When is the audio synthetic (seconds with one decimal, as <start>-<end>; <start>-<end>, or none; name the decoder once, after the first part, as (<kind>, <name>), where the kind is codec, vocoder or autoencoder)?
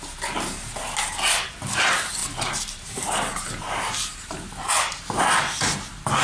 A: 2.2-4.5 (vocoder, BigVGAN v2)